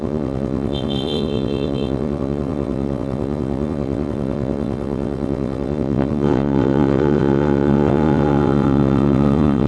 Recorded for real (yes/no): no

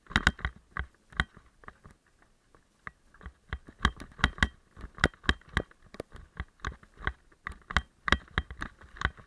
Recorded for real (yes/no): yes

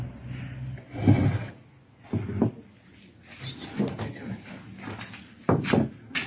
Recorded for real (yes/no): yes